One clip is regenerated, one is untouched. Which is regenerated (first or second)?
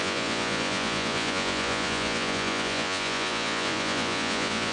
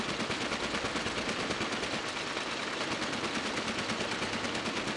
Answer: first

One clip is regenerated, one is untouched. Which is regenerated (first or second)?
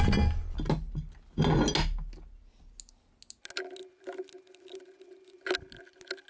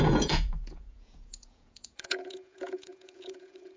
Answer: second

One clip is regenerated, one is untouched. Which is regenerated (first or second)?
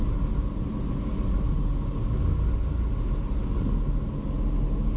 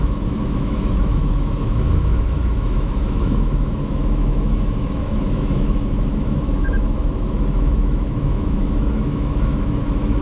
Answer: second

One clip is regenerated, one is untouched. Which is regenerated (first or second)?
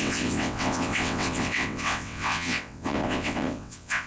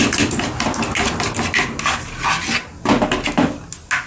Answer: first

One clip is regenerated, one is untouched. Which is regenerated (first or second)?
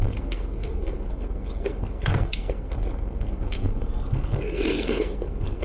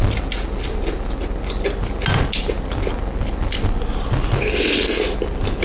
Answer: first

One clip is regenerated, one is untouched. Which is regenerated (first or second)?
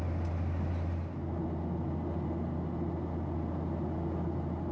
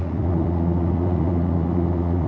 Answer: second